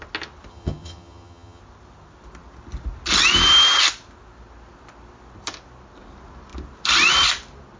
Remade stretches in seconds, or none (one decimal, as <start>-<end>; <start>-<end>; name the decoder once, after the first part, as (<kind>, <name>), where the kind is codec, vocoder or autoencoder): 0.5-1.6 (vocoder, HiFi-GAN)